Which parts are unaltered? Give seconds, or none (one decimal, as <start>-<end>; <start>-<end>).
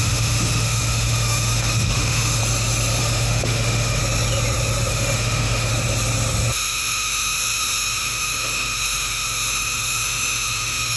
2.4-3.0; 4.0-4.9; 5.7-6.5